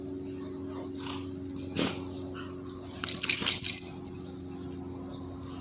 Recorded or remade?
recorded